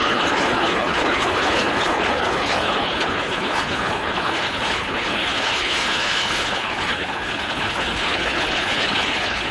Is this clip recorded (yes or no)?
no